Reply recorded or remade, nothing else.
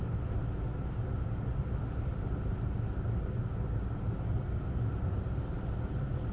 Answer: recorded